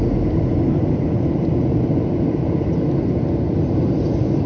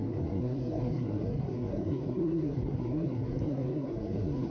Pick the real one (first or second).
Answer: first